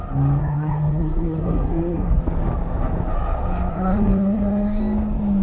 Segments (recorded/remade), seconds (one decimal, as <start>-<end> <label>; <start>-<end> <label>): 0.0-0.4 recorded; 0.4-2.2 remade; 2.2-3.7 recorded; 3.7-4.8 remade; 4.8-5.4 recorded